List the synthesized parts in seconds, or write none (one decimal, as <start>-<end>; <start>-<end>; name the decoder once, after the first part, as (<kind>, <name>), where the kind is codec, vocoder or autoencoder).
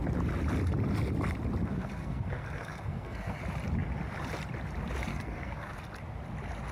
1.7-3.4 (codec, SNAC); 5.1-5.8